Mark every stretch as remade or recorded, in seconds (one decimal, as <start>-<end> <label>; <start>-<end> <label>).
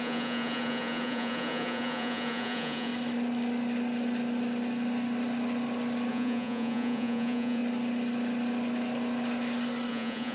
0.0-2.9 remade; 2.9-6.1 recorded; 6.1-7.6 remade; 7.6-9.9 recorded; 9.9-10.3 remade